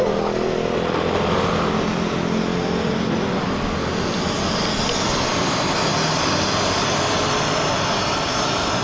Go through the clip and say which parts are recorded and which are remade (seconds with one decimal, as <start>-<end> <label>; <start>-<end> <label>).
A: 0.0-8.8 recorded